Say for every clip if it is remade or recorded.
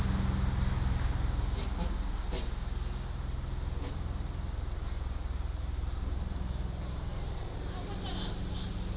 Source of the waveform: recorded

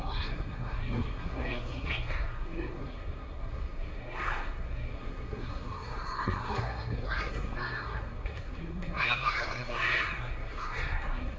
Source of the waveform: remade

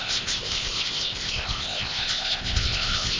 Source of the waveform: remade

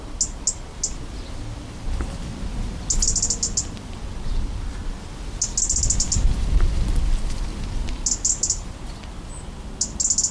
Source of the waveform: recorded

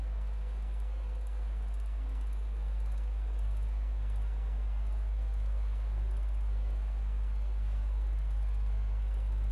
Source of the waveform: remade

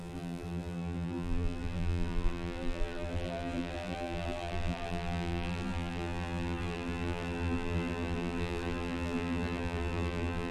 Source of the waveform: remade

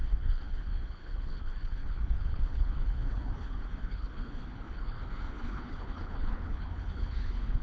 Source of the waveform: remade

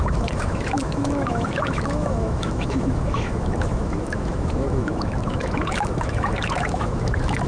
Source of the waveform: remade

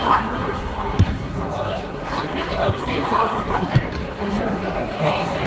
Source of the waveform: remade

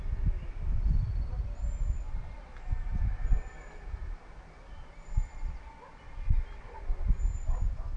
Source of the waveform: recorded